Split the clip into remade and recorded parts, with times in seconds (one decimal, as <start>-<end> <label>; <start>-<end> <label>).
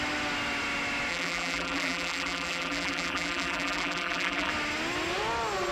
0.0-1.1 recorded; 1.1-4.5 remade; 4.5-5.7 recorded